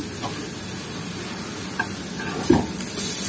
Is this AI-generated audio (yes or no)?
no